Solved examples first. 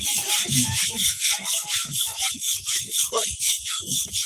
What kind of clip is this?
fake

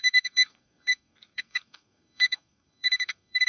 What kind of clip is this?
fake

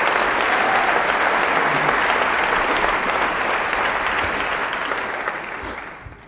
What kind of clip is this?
real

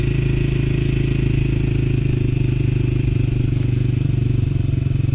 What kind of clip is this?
real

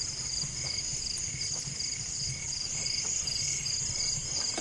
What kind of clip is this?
real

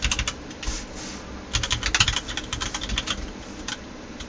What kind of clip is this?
real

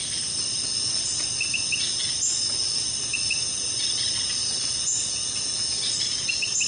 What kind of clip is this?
real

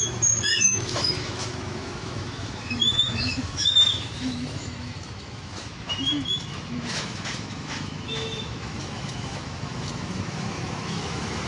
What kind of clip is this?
fake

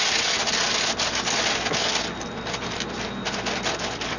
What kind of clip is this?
real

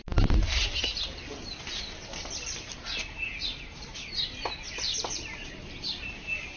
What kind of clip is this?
real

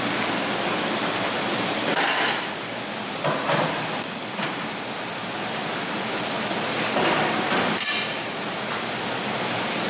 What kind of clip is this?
real